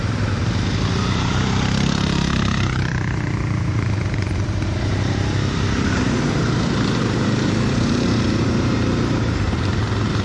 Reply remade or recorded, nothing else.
remade